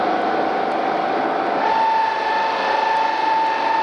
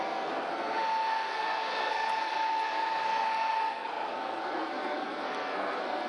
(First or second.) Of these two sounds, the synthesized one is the second